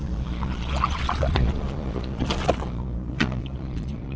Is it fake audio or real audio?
fake